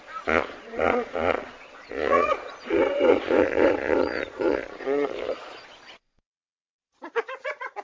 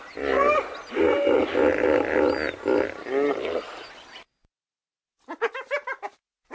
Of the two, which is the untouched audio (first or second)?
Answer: second